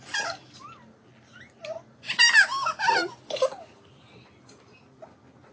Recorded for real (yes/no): yes